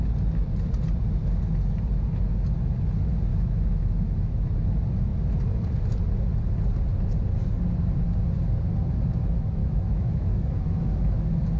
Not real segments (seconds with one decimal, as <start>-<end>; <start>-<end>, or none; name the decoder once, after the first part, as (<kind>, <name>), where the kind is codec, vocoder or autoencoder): 3.3-4.3 (autoencoder, DAC-VAE); 9.6-11.6